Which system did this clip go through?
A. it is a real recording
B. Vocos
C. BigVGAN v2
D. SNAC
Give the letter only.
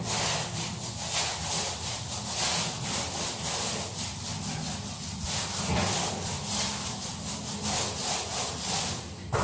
A